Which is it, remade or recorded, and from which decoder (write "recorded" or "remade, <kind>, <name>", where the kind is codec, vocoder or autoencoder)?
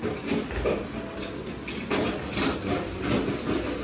recorded